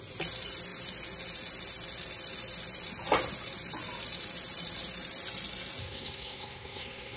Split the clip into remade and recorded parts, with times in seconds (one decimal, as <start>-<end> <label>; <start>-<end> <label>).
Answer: 0.0-5.8 recorded; 5.8-7.2 remade